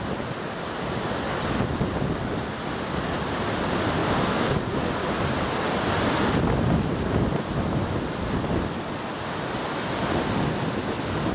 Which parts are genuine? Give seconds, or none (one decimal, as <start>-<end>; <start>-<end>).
0.0-11.3

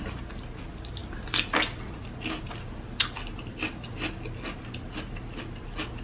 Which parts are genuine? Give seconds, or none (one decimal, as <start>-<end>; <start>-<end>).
0.0-6.0

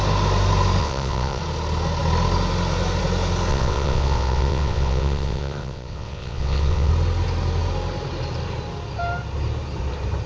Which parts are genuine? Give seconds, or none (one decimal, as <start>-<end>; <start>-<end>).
0.0-0.8; 1.4-3.5; 6.9-10.3

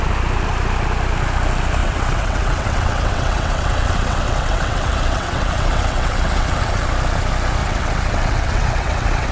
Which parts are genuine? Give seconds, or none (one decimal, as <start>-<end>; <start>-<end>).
0.0-1.8; 6.9-7.6

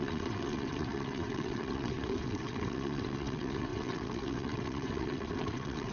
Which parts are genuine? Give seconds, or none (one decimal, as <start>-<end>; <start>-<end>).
none

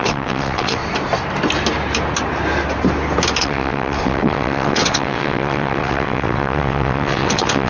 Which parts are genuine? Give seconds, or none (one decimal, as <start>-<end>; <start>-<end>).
0.8-3.4

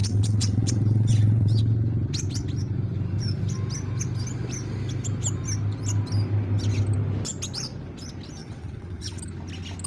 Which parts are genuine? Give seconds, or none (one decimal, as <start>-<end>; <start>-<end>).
1.6-8.4; 9.2-9.9